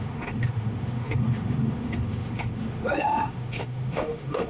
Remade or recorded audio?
remade